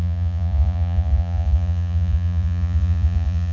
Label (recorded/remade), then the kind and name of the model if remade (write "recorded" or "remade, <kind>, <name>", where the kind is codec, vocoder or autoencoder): remade, vocoder, Vocos